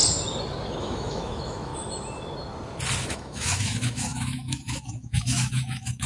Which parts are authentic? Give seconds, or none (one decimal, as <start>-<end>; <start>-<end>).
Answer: 0.0-0.8; 1.7-3.0

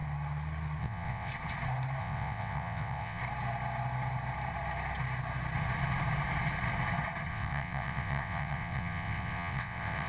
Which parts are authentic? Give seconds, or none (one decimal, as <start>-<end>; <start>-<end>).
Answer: 0.0-0.8; 1.3-2.0; 3.2-7.3